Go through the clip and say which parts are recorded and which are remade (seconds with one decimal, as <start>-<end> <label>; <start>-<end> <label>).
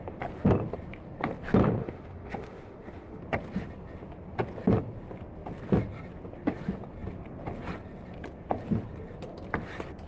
0.0-1.8 recorded; 1.8-3.2 remade; 3.2-10.1 recorded